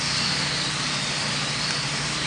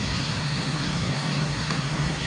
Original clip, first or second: first